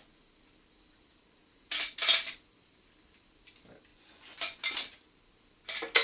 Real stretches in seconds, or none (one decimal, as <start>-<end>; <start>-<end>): 0.0-3.9; 4.6-6.0